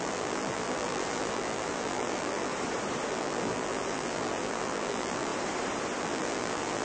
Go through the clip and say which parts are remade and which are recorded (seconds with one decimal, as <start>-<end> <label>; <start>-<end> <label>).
0.0-2.5 remade; 2.5-3.1 recorded; 3.1-5.3 remade; 5.3-6.0 recorded; 6.0-6.8 remade